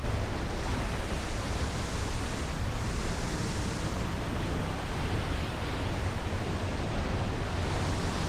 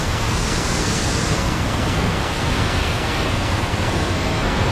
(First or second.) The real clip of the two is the first